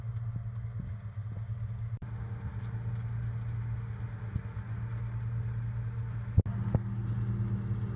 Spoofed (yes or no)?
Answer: no